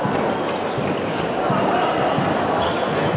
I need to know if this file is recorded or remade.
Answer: recorded